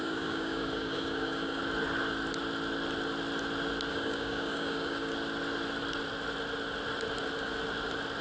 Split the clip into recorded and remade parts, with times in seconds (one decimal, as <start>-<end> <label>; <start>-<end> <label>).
0.0-1.6 remade; 1.6-3.9 recorded; 3.9-5.1 remade; 5.1-8.2 recorded